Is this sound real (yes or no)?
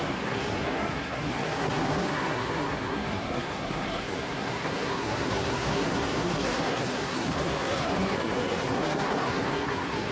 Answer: no